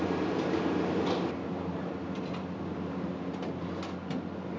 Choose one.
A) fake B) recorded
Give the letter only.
B